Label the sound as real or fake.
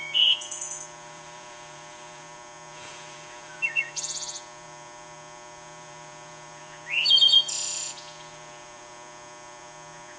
fake